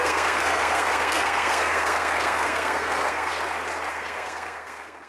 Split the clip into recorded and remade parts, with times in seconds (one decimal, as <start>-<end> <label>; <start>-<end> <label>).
0.0-3.3 remade; 3.3-3.9 recorded; 3.9-5.1 remade